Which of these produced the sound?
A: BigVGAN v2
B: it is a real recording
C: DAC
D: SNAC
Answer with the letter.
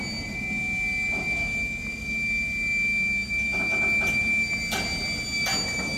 B